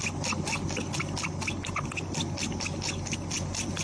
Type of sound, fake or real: real